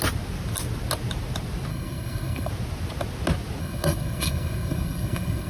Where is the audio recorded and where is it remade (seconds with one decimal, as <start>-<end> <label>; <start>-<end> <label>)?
0.0-1.7 recorded; 1.7-2.5 remade; 2.5-3.6 recorded; 3.6-5.5 remade